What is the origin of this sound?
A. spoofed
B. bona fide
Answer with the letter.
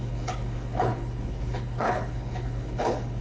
A